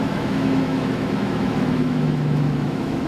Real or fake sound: fake